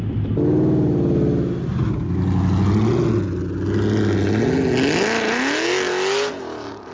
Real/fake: real